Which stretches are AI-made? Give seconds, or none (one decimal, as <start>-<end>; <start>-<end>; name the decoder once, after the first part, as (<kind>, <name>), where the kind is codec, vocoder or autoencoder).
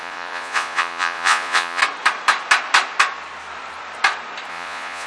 0.0-1.8 (vocoder, Vocos); 4.5-5.1